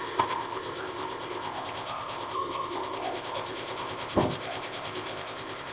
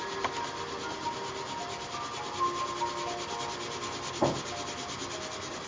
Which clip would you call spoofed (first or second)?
first